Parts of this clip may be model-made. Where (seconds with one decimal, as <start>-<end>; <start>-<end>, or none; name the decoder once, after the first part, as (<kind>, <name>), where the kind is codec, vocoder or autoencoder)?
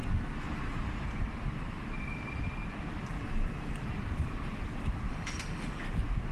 5.1-5.8 (autoencoder, DAC-VAE)